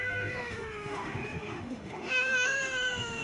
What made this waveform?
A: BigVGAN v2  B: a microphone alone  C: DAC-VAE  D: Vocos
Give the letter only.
C